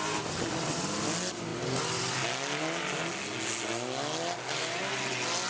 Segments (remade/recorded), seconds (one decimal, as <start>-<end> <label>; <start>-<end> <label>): 0.0-5.5 recorded